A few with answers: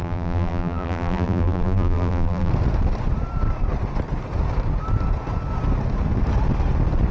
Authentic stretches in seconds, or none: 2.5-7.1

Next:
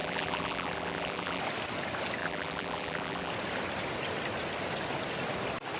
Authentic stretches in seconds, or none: 1.4-2.2; 3.3-5.8